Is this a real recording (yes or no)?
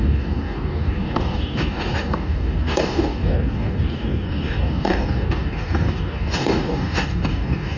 no